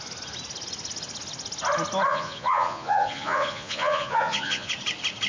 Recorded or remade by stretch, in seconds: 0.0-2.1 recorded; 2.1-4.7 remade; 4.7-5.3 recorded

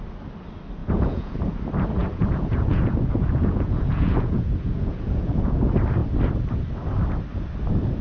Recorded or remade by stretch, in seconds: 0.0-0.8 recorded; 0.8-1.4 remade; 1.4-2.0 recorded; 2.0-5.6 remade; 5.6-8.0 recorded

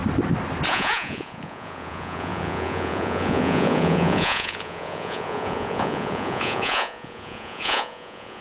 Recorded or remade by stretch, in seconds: 0.0-0.7 recorded; 0.7-8.4 remade

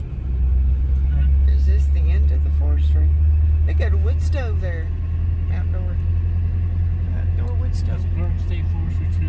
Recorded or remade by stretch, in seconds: 0.0-9.3 recorded

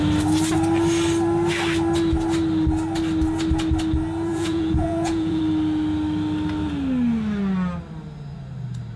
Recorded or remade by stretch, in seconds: 0.0-4.3 recorded; 4.3-5.4 remade; 5.4-9.0 recorded